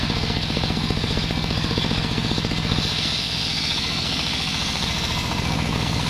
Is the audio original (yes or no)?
no